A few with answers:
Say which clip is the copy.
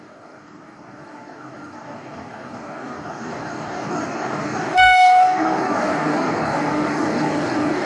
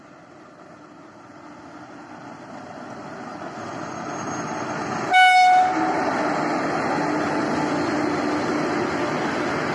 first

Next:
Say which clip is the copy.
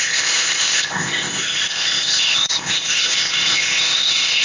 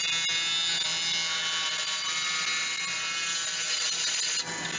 first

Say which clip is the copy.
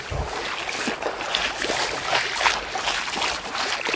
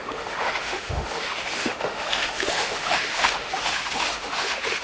second